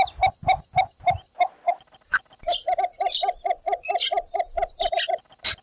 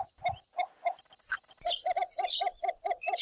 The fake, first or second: second